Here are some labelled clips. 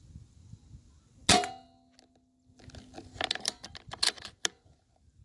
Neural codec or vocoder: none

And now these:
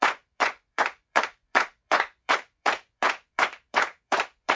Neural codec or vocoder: vocoder, Vocos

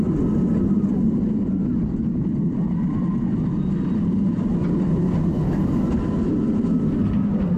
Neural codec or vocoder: none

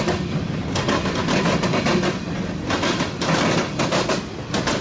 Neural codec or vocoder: none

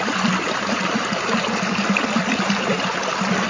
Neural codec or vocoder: none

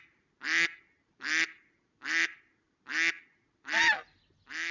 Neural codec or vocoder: none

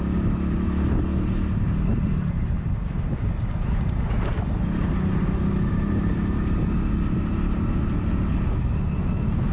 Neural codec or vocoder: none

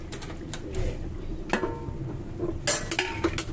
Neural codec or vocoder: none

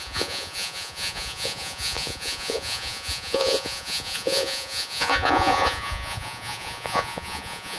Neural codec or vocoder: vocoder, Vocos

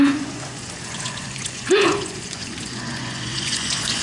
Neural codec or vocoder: vocoder, Vocos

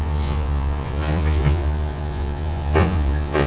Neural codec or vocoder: vocoder, Vocos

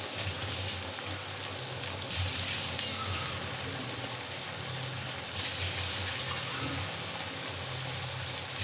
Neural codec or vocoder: none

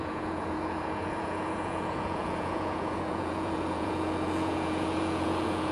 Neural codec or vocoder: vocoder, Vocos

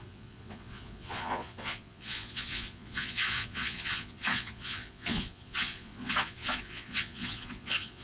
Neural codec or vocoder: vocoder, Vocos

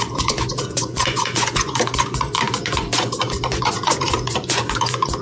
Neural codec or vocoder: vocoder, Vocos